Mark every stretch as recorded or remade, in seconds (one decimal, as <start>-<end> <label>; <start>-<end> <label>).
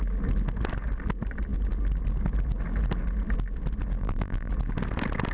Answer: 0.0-4.0 recorded; 4.0-4.5 remade; 4.5-5.3 recorded